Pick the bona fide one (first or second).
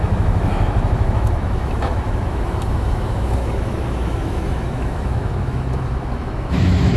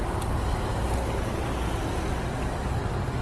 second